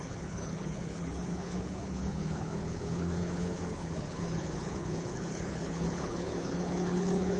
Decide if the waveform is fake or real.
fake